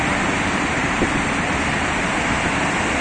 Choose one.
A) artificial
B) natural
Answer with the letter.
B